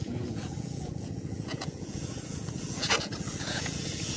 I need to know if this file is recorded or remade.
remade